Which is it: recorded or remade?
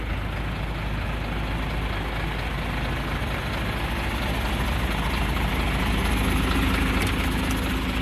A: recorded